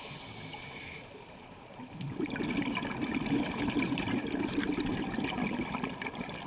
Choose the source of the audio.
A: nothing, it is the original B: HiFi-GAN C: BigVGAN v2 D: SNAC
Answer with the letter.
A